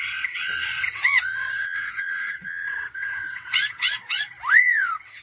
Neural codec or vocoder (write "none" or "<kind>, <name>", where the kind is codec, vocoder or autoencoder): vocoder, WaveNeXt